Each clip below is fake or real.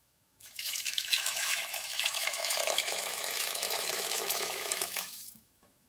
fake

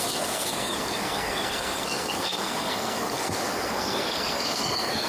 fake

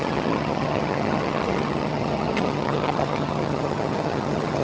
fake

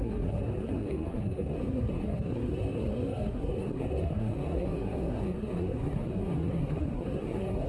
fake